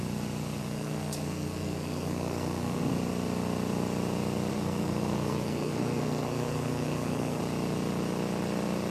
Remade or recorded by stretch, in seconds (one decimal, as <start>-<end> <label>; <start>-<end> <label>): 0.0-0.6 recorded; 0.6-2.8 remade; 2.8-4.5 recorded; 4.5-7.4 remade; 7.4-8.9 recorded